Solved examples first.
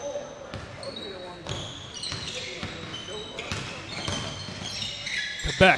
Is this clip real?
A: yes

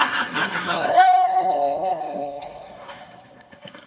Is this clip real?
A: no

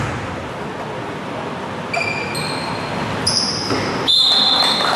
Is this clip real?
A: yes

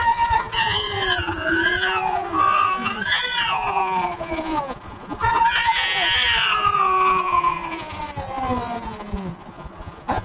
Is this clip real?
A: no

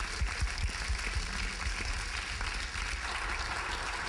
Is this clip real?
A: yes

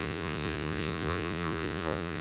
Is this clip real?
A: no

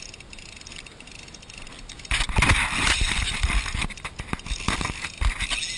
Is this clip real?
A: yes